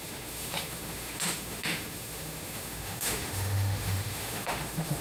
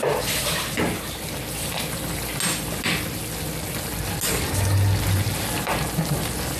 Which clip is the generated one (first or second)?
first